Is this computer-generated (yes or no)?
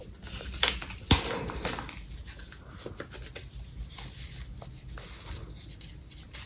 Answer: no